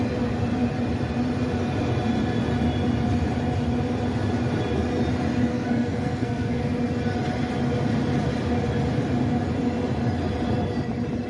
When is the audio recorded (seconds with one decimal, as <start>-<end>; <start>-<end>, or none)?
0.0-5.5; 6.6-11.3